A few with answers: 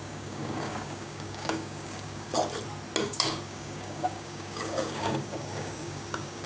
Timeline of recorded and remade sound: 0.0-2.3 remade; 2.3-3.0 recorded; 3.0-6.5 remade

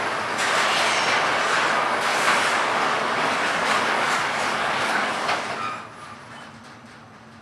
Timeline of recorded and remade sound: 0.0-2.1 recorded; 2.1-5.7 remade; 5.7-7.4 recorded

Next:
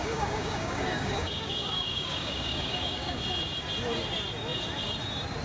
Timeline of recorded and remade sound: 0.0-3.2 remade; 3.2-5.4 recorded

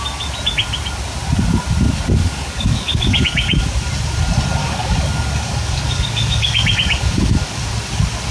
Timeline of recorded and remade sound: 0.0-2.2 recorded; 2.2-3.9 remade; 3.9-4.6 recorded; 4.6-7.6 remade; 7.6-8.3 recorded

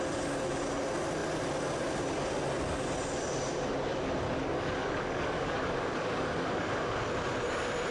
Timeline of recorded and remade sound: 0.0-3.9 recorded; 3.9-7.1 remade; 7.1-7.9 recorded

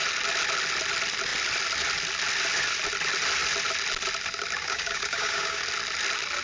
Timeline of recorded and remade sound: 0.0-4.6 recorded; 4.6-5.6 remade; 5.6-6.4 recorded

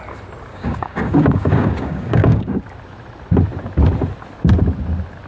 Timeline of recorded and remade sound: 0.0-0.5 recorded; 0.5-2.6 remade; 2.6-5.3 recorded